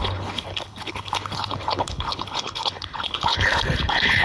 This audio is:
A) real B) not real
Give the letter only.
B